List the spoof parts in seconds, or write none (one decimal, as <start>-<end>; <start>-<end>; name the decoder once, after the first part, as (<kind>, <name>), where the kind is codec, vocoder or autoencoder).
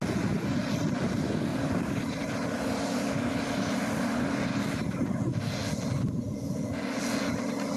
1.5-4.6 (vocoder, BigVGAN v2)